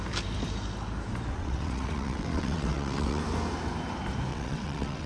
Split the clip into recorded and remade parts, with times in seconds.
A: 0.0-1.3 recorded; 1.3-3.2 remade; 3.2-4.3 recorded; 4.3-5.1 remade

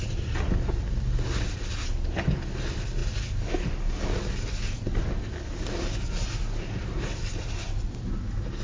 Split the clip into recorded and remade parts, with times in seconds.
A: 0.0-8.6 recorded

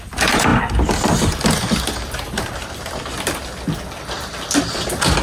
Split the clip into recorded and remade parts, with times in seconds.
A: 0.0-5.2 recorded

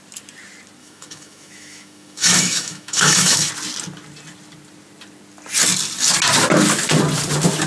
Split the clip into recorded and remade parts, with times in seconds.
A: 0.0-0.8 recorded; 0.8-3.5 remade; 3.5-7.7 recorded

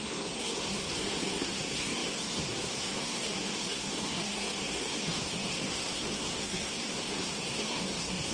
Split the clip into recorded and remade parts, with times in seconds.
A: 0.0-8.3 remade